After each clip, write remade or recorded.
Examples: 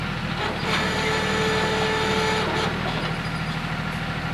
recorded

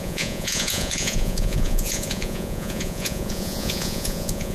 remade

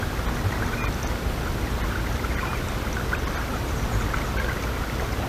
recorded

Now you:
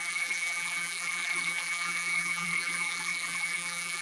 remade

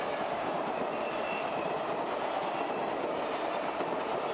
recorded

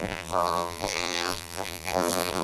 remade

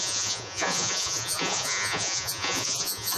remade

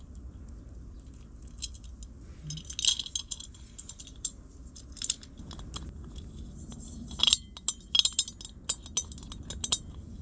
recorded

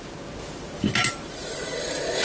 recorded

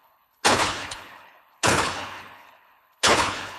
remade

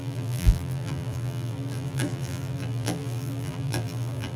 remade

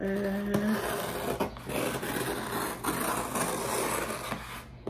recorded